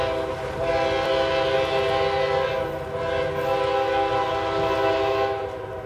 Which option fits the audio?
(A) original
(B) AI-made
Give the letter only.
A